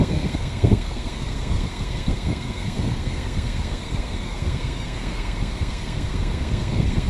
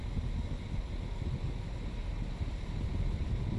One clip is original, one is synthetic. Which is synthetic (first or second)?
first